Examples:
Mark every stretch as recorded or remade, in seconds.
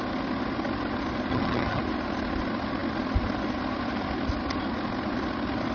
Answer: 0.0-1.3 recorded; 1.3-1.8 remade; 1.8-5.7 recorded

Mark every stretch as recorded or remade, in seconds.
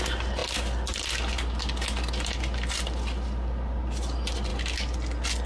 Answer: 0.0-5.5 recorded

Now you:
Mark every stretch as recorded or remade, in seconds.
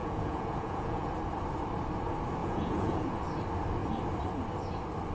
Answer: 0.0-1.1 remade; 1.1-2.4 recorded; 2.4-3.2 remade; 3.2-5.1 recorded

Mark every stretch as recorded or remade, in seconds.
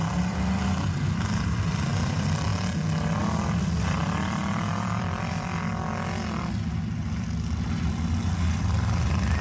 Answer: 0.0-2.5 remade; 2.5-3.2 recorded; 3.2-5.7 remade; 5.7-8.6 recorded; 8.6-9.4 remade